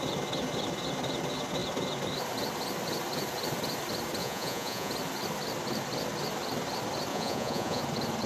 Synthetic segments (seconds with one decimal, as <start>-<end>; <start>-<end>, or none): 4.2-4.9; 7.1-7.8